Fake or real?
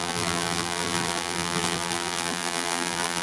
fake